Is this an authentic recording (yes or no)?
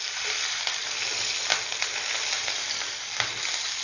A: yes